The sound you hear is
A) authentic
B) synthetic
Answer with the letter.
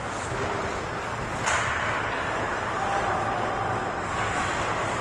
A